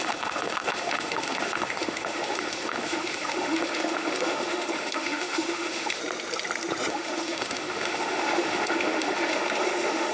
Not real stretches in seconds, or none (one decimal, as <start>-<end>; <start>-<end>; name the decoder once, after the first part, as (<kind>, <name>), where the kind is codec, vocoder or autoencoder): 0.0-6.0 (autoencoder, DAC-VAE); 6.9-10.1